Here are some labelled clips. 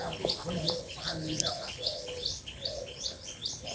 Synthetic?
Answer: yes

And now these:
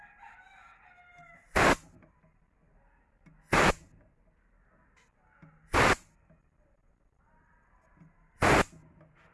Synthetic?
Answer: no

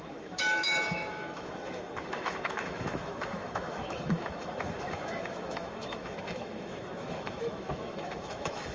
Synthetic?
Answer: yes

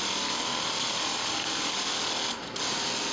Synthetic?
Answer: no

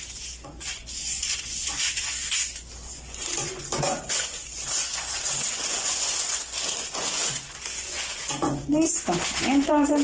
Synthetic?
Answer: yes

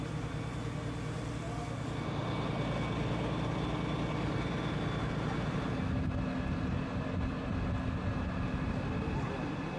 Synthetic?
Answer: no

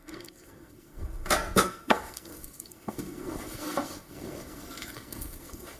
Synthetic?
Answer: yes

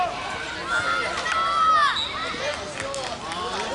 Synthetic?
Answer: no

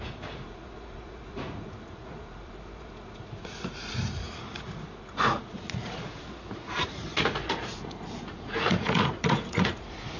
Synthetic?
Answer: yes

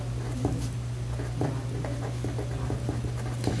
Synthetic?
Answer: no